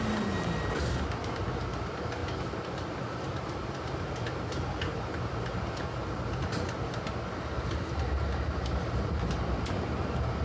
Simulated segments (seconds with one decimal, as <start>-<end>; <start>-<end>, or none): none